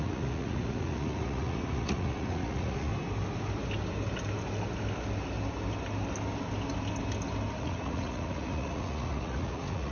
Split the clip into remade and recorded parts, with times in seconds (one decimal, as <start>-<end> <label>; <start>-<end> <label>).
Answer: 0.0-2.9 remade; 2.9-7.6 recorded; 7.6-9.9 remade